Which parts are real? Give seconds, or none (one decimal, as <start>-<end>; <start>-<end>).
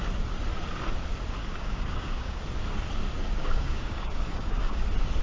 0.0-1.4; 2.4-3.4; 4.8-5.2